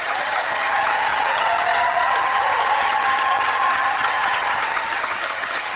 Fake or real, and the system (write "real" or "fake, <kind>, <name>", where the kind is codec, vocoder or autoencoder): fake, vocoder, HiFi-GAN